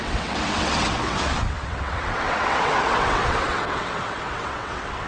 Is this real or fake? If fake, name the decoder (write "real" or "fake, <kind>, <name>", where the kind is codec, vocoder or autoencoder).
fake, vocoder, WaveNeXt